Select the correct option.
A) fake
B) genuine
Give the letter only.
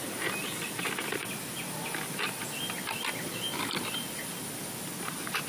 B